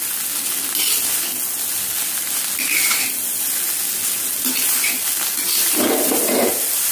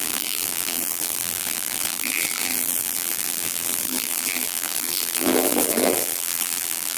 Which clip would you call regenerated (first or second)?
second